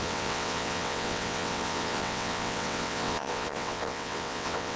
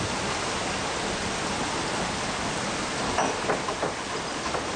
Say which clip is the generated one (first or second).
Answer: first